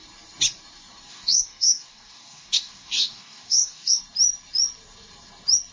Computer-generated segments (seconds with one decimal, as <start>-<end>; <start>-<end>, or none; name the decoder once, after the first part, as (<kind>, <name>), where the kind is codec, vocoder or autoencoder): 1.1-4.0 (codec, DAC)